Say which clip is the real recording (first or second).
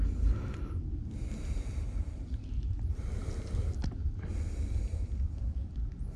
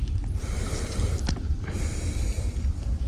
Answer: first